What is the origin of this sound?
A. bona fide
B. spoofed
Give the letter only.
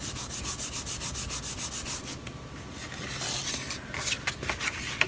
A